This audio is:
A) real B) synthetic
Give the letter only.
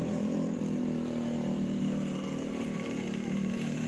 B